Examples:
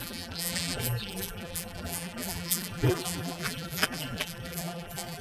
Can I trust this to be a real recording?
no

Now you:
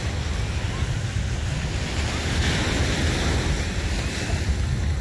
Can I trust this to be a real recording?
yes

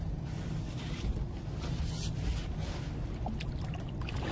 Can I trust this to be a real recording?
yes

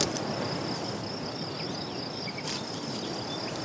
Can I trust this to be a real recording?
yes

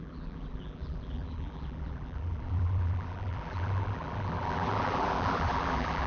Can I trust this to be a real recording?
no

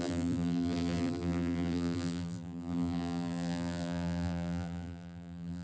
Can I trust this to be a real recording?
no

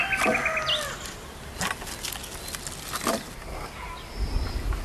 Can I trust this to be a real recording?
yes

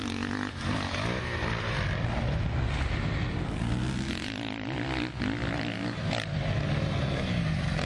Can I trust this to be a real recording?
yes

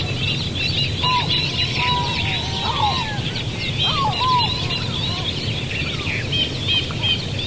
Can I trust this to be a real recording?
yes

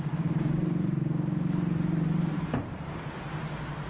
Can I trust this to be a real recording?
no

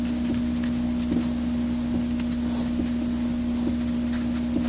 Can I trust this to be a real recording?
yes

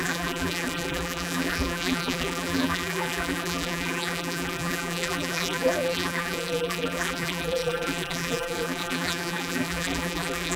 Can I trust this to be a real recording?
no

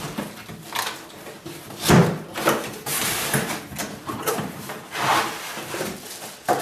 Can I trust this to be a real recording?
yes